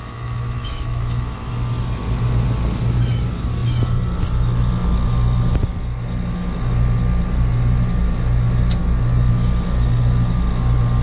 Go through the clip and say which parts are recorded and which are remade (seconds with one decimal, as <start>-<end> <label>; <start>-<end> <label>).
0.0-1.5 remade; 1.5-11.0 recorded